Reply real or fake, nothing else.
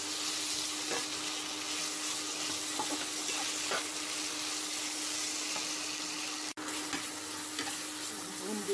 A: real